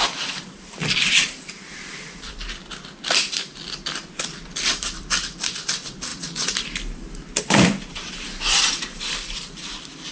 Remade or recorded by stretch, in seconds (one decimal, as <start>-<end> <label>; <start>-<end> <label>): 0.0-10.1 remade